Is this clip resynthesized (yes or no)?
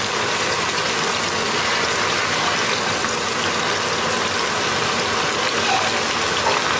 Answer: no